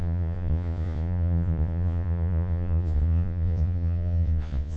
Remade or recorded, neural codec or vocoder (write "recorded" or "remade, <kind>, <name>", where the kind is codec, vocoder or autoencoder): remade, vocoder, Vocos